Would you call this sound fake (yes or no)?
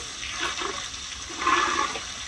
no